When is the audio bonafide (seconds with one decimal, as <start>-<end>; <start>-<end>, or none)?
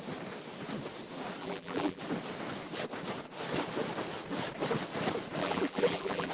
0.0-1.4; 2.0-5.4